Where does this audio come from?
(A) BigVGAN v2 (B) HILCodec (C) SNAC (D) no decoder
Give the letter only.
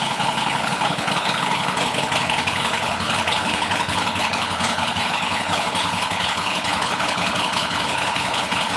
B